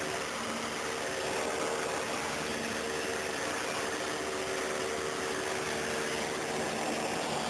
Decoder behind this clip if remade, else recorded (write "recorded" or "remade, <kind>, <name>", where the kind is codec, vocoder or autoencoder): recorded